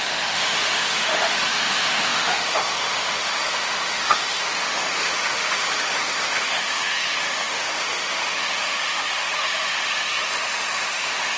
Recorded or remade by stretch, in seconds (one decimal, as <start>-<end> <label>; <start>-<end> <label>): 0.0-11.4 remade